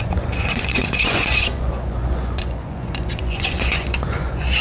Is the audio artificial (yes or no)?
yes